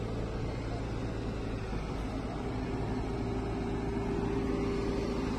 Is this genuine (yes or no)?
yes